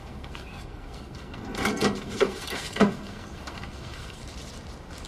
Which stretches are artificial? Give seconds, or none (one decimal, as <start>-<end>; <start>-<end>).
0.0-4.2